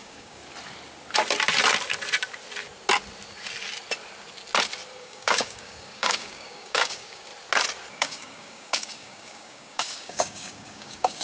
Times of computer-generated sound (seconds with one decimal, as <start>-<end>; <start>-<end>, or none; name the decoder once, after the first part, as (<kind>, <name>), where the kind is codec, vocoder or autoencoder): 0.0-0.4 (codec, DAC); 5.0-7.3; 7.9-11.2